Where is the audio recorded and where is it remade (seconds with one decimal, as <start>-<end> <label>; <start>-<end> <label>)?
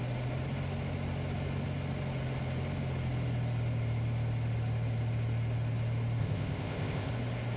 0.0-6.2 recorded; 6.2-7.1 remade; 7.1-7.6 recorded